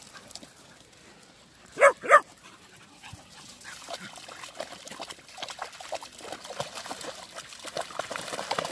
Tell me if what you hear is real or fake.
real